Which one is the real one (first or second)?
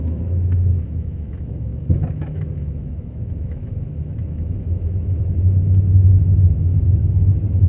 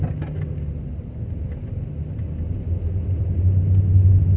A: second